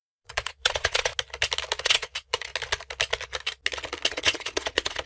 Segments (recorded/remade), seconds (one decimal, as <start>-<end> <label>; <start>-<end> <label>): 0.0-1.1 remade; 1.1-1.8 recorded; 1.8-2.5 remade; 2.5-4.1 recorded; 4.1-5.1 remade